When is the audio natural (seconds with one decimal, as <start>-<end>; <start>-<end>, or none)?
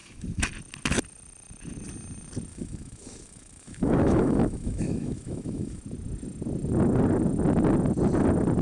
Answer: 0.5-2.5; 5.8-8.6